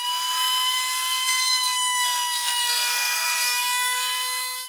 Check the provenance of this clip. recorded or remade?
remade